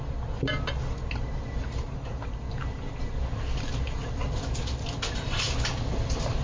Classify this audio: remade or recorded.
recorded